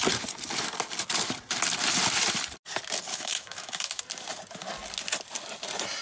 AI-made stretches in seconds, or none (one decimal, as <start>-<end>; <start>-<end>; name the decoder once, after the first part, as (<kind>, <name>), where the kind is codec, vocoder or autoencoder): 3.1-4.0 (autoencoder, DAC-VAE)

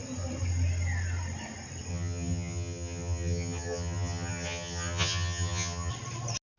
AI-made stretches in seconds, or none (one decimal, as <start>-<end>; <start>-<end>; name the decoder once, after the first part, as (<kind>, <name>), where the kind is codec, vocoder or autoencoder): 1.9-5.9 (vocoder, HiFi-GAN)

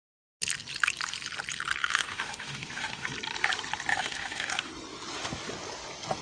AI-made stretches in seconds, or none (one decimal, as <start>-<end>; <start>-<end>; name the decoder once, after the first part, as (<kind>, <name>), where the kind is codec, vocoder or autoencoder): 1.8-3.1 (autoencoder, DAC-VAE); 3.9-4.7

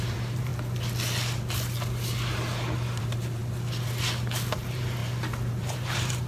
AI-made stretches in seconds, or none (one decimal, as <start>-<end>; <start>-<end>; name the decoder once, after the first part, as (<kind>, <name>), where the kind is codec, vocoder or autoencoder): 0.0-0.5 (vocoder, BigVGAN v2); 3.0-3.4; 4.5-5.0; 5.5-6.3

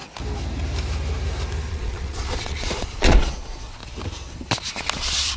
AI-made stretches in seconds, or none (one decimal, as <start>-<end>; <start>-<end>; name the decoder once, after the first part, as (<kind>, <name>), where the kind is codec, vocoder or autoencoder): 1.7-3.8 (vocoder, Vocos); 5.0-5.4

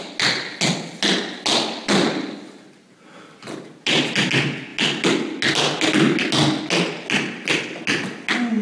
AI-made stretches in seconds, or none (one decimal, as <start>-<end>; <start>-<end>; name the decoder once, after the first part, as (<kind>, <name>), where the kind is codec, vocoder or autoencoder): none